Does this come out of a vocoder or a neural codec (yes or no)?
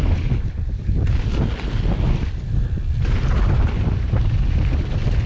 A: no